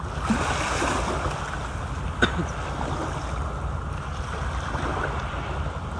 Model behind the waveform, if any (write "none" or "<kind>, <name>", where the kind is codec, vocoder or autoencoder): none